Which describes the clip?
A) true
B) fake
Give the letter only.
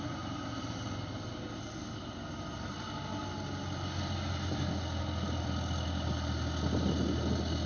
A